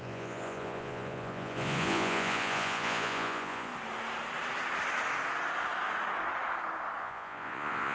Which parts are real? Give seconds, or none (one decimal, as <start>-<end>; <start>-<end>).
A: 3.7-7.0